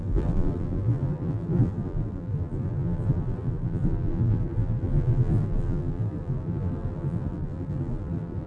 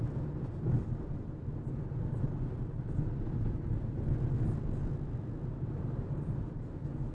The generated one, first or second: first